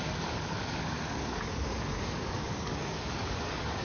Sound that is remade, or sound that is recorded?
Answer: remade